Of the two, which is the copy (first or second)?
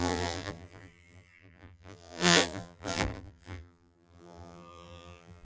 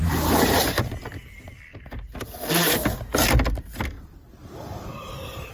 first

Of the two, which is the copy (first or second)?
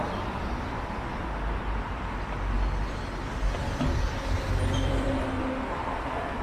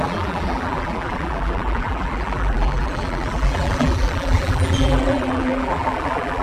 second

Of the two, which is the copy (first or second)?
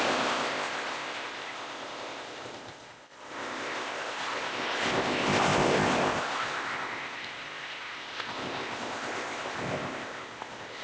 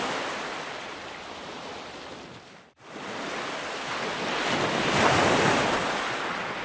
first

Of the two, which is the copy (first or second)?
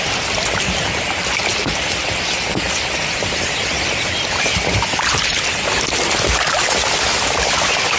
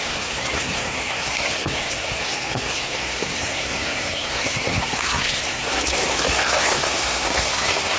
second